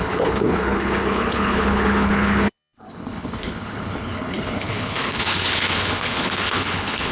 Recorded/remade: remade